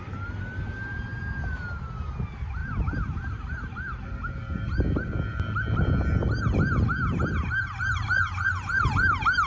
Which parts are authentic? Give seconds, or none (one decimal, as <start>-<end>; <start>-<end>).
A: 0.0-9.5

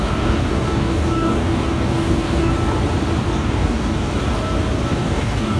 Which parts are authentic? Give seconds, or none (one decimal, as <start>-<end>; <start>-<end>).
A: 2.5-3.3; 4.1-4.9

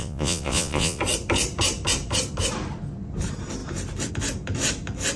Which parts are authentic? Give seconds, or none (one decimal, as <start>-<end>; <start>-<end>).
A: 1.0-5.2

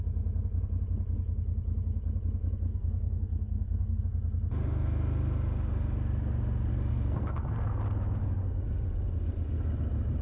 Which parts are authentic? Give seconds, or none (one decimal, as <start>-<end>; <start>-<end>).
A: 0.0-2.7; 4.0-6.9; 7.8-10.2